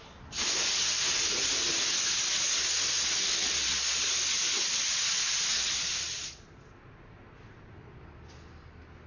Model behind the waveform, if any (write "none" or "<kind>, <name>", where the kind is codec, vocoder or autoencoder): none